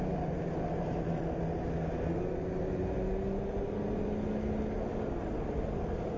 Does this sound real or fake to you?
real